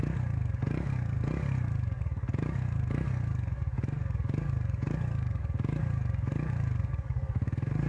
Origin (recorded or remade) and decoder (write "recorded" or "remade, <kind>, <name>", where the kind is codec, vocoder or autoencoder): remade, codec, DAC